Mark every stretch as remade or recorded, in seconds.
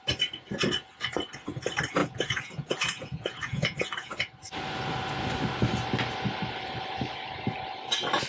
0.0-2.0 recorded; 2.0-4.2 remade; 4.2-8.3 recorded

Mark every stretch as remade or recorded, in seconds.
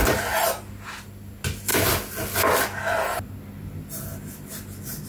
0.0-5.1 recorded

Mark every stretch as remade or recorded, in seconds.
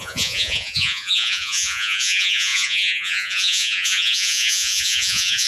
0.0-5.5 remade